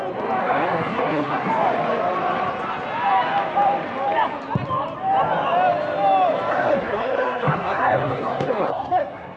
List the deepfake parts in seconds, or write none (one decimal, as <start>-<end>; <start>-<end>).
0.4-1.5; 6.5-9.4